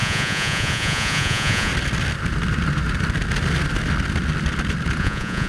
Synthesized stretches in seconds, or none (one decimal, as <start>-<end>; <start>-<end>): 0.0-1.7; 5.0-5.5